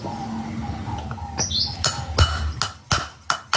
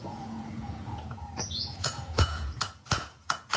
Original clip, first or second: first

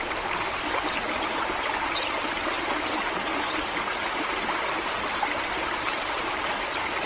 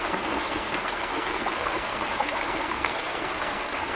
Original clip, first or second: first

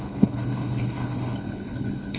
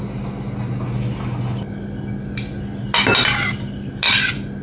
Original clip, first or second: second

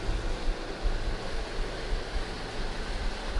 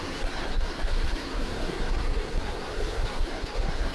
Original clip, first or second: first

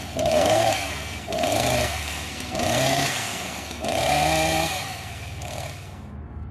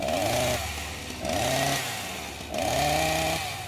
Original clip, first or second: second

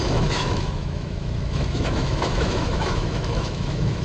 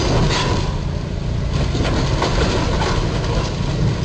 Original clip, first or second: second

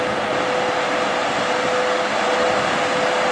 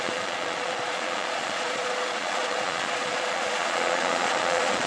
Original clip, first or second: first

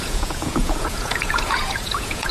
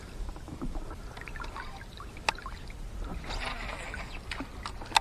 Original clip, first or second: second